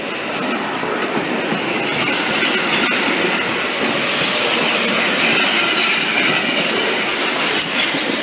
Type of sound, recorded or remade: recorded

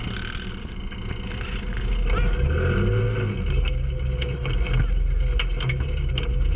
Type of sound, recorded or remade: recorded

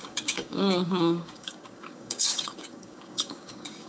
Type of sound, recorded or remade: remade